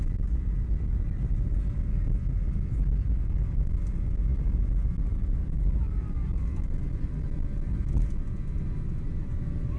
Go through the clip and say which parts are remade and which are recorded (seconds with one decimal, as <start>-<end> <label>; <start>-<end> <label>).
0.0-9.8 recorded